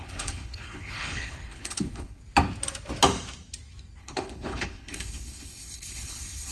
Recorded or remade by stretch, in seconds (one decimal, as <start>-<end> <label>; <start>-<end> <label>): 0.0-2.2 remade; 2.2-4.0 recorded; 4.0-6.5 remade